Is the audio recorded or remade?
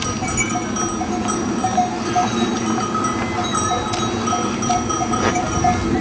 recorded